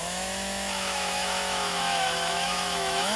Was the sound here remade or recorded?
remade